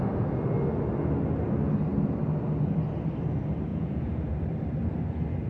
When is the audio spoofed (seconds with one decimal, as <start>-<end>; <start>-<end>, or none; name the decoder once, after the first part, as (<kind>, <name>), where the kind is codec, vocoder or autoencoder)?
3.7-4.3 (vocoder, Vocos)